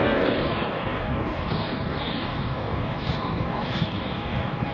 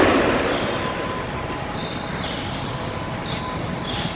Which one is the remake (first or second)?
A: first